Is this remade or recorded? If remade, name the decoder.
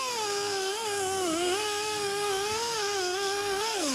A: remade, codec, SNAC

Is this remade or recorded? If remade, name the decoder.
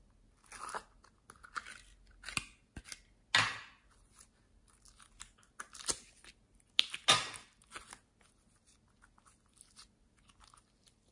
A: recorded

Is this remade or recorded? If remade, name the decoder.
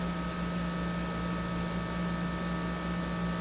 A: recorded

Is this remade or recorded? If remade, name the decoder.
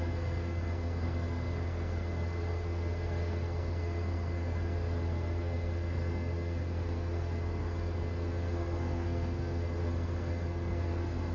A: remade, codec, SNAC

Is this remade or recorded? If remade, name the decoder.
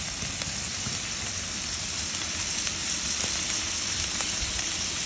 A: recorded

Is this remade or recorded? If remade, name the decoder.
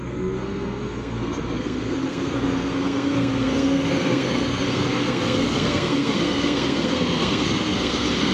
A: remade, codec, SNAC